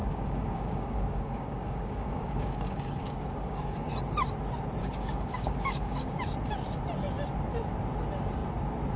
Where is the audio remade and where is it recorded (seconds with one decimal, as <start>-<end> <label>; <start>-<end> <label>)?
0.0-3.9 remade; 3.9-4.8 recorded; 4.8-6.2 remade; 6.2-9.0 recorded